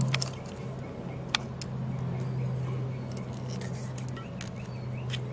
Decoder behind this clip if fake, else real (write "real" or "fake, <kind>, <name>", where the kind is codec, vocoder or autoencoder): real